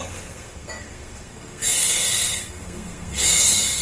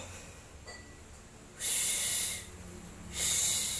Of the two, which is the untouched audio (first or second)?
second